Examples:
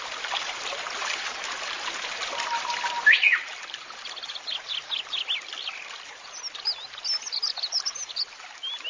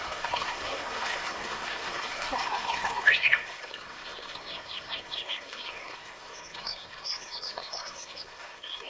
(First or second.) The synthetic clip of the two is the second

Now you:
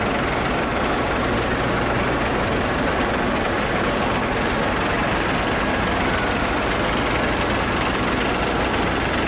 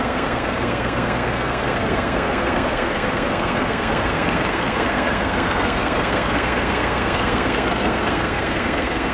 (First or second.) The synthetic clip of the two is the second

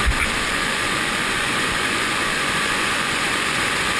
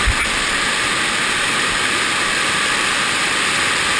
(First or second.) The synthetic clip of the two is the first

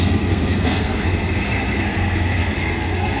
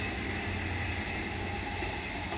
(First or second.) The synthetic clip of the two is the first